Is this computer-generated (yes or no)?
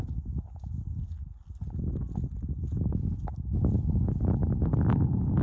no